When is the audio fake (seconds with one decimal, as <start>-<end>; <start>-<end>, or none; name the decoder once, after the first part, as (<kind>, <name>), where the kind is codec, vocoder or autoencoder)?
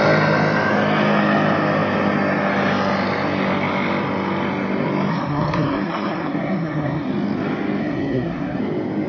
5.1-7.1 (codec, SNAC); 7.8-8.6